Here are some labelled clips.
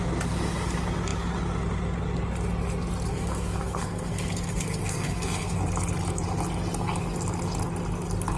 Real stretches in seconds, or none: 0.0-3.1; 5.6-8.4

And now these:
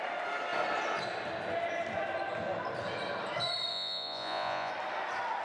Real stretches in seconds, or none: 0.0-3.7; 4.7-5.4

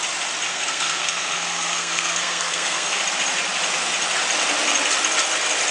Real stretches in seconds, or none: 0.0-0.5; 3.0-5.7

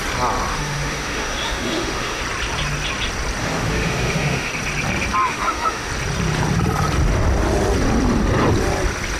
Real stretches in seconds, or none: 0.0-0.5; 2.2-3.4; 4.5-5.2; 5.9-9.2

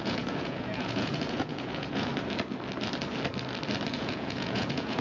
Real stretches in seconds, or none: 2.1-3.9